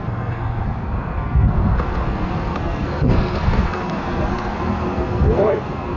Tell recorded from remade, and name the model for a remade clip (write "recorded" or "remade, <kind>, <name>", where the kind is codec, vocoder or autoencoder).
remade, codec, SNAC